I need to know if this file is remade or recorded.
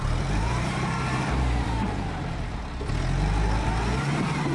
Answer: remade